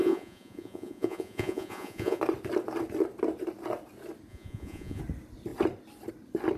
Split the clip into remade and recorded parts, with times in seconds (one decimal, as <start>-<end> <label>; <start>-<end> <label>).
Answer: 0.0-2.2 remade; 2.2-4.3 recorded; 4.3-5.0 remade; 5.0-6.6 recorded